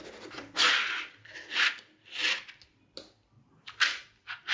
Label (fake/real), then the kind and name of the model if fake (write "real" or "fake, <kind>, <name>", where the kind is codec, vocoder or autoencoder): real